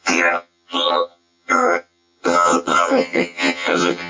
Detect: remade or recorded remade